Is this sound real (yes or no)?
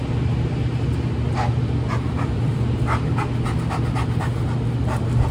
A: yes